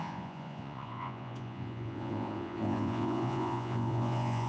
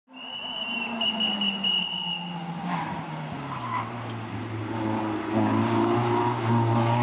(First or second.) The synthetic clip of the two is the first